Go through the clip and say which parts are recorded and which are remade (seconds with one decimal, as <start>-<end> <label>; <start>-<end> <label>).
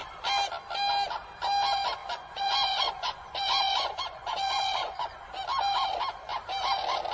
0.0-2.0 recorded; 2.0-5.3 remade; 5.3-7.1 recorded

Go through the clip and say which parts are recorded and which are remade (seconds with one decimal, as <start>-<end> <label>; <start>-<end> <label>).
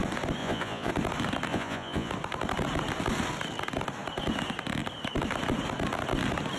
0.0-0.4 recorded; 0.4-0.9 remade; 0.9-1.5 recorded; 1.5-2.1 remade; 2.1-6.6 recorded